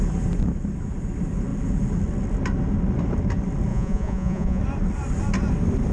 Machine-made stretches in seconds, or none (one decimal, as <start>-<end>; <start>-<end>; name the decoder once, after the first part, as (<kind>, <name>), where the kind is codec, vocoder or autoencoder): 3.7-4.6 (vocoder, Vocos)

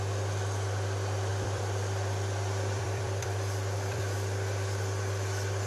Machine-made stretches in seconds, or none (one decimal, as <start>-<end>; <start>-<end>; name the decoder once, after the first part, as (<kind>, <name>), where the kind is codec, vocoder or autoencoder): 1.3-4.0 (vocoder, BigVGAN v2)

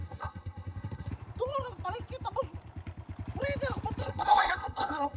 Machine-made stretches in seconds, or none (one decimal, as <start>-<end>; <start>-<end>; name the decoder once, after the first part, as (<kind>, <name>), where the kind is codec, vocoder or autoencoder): 0.0-1.1 (codec, SNAC); 4.0-5.2

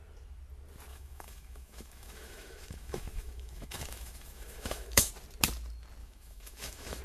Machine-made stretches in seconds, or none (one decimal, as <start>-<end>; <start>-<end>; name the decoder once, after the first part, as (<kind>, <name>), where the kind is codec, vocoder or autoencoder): 0.9-5.1 (autoencoder, DAC-VAE); 6.0-7.0

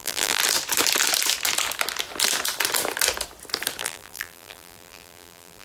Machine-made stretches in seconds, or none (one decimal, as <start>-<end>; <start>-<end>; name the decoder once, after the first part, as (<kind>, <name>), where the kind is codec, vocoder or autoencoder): 0.0-0.4 (vocoder, BigVGAN v2); 3.8-5.6